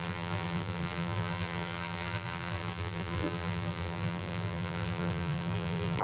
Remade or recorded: remade